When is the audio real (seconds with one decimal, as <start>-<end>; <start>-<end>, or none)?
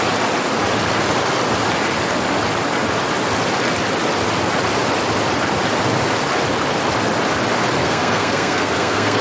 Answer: 0.0-7.8